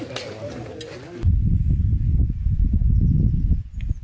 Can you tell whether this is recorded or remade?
recorded